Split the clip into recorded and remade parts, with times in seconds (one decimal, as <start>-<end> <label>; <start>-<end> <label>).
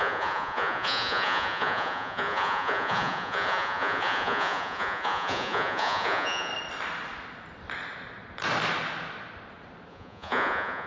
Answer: 0.0-6.5 remade; 6.5-9.9 recorded; 9.9-10.9 remade